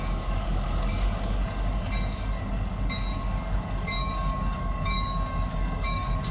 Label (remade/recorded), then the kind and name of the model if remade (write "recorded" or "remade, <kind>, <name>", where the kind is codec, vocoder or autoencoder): remade, codec, DAC